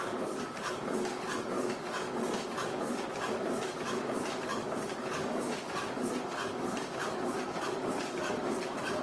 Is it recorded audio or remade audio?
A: remade